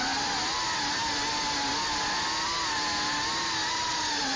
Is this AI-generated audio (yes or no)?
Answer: no